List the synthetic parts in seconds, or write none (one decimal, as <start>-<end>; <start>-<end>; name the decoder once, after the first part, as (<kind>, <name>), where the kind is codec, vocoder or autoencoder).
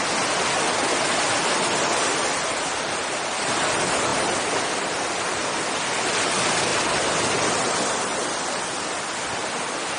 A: none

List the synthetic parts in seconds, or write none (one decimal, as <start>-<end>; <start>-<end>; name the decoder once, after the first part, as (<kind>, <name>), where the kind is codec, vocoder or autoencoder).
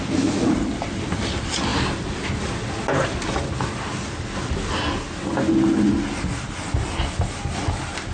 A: none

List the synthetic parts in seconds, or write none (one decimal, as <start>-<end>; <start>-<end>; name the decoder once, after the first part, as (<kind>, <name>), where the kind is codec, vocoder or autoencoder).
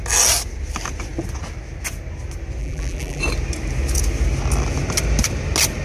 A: 2.6-3.2 (vocoder, BigVGAN v2)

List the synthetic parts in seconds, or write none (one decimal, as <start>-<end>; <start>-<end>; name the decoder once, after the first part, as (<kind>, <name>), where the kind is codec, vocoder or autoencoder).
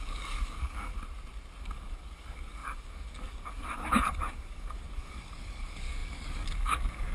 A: 0.0-0.9 (codec, DAC); 1.6-7.1